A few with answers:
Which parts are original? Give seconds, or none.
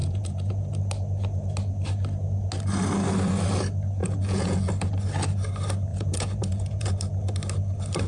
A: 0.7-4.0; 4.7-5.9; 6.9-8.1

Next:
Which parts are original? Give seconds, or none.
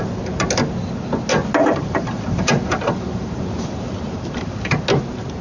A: 0.0-1.6; 4.8-5.4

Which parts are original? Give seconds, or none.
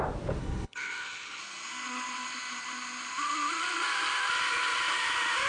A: 0.0-0.4; 1.4-5.5